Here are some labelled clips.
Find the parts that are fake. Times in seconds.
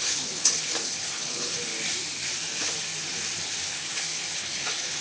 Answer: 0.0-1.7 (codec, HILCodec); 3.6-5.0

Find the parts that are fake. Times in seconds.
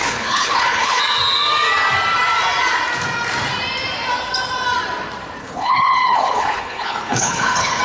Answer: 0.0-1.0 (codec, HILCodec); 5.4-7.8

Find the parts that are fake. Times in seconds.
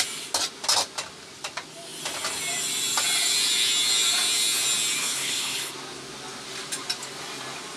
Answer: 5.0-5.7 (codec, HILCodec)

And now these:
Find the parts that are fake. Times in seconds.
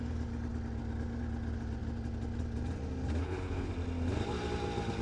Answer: 3.2-3.7 (codec, HILCodec)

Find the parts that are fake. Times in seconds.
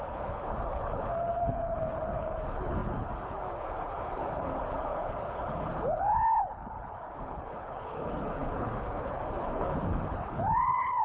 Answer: 0.0-11.0 (codec, HILCodec)